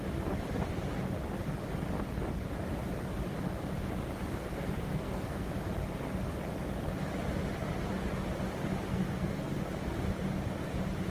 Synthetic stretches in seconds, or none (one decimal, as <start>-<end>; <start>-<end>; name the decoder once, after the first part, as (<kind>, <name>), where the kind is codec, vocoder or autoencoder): 4.4-5.5 (codec, SNAC); 8.9-9.5